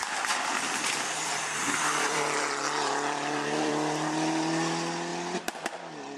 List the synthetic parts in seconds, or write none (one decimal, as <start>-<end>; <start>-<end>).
0.0-3.7